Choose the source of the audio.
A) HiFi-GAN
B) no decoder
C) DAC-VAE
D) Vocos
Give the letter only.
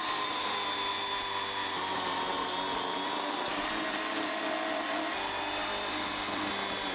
B